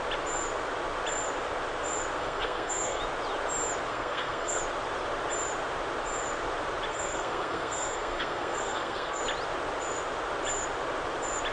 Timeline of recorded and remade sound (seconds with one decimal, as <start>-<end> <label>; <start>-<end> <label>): 0.0-2.2 recorded; 2.2-3.0 remade; 3.0-3.9 recorded; 3.9-4.6 remade; 4.6-6.9 recorded; 6.9-9.2 remade; 9.2-11.5 recorded